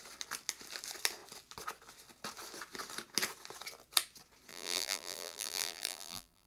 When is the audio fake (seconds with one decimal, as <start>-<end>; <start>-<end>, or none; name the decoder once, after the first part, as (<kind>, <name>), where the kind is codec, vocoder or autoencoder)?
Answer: 4.5-6.5 (vocoder, BigVGAN v2)